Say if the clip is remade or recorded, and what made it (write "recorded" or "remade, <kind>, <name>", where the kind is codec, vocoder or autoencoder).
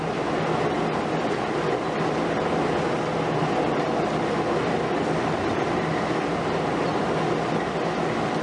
recorded